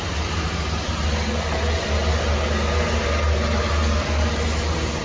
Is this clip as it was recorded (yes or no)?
yes